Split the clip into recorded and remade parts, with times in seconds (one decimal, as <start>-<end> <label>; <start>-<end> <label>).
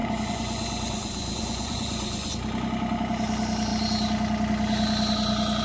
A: 0.0-2.3 remade; 2.3-5.6 recorded